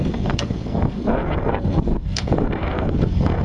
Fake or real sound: fake